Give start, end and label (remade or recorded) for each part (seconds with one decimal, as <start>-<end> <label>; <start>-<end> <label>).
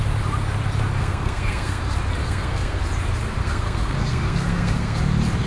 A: 0.0-1.0 recorded; 1.0-1.8 remade; 1.8-2.2 recorded; 2.2-2.8 remade; 2.8-3.4 recorded; 3.4-5.0 remade; 5.0-5.5 recorded